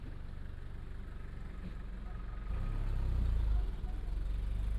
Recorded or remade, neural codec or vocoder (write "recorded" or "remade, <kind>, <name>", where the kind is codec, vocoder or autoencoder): recorded